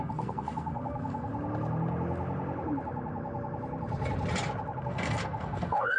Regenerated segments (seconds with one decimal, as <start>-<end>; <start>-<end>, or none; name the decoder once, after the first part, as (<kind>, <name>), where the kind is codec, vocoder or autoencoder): 0.0-1.3 (codec, SNAC); 4.8-6.0